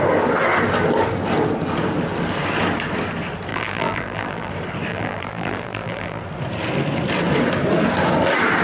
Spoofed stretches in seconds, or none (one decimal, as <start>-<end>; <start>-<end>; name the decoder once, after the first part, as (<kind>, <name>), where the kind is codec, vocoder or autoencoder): 3.5-4.5 (vocoder, BigVGAN v2); 4.9-6.2